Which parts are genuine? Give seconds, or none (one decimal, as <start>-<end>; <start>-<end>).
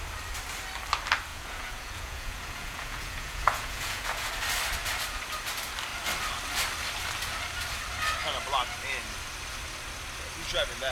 0.0-1.3; 4.3-10.9